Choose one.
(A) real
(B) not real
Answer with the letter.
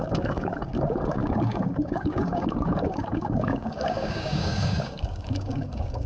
B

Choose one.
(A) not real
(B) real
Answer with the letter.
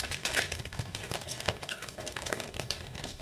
A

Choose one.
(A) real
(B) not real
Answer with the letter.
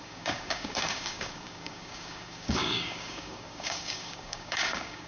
B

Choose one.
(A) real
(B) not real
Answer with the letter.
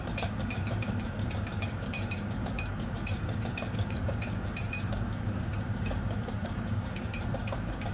B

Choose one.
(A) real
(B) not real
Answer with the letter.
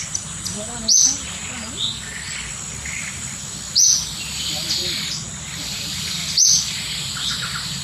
A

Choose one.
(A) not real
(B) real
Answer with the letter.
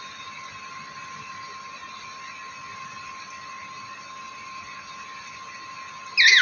B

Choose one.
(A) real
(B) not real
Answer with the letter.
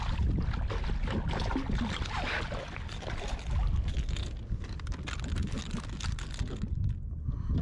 A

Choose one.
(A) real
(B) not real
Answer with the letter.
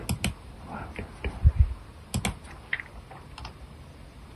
A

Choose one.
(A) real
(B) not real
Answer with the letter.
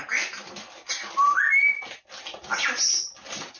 A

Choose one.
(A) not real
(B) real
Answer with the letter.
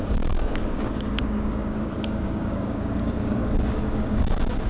A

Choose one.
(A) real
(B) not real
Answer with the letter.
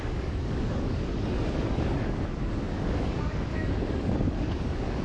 B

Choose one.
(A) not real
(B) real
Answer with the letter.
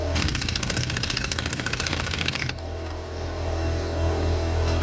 A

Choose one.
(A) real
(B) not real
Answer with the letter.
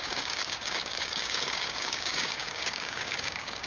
B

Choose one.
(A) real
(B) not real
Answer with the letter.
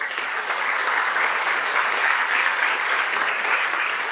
B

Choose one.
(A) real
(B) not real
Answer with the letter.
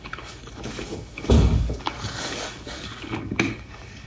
B